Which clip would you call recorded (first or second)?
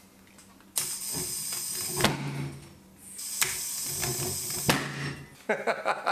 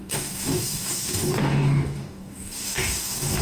first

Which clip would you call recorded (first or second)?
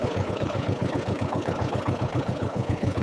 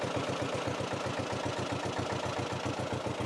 second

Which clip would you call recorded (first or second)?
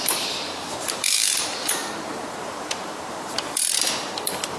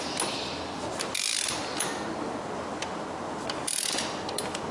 second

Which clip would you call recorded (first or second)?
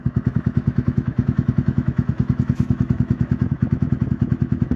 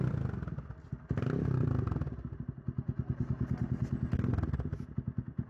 second